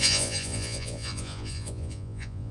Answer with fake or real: fake